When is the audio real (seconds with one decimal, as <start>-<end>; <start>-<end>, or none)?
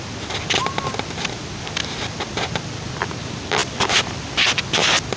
0.0-3.6; 4.6-5.2